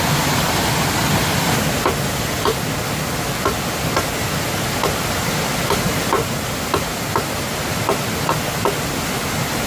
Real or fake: real